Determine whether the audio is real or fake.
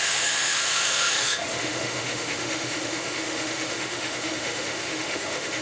fake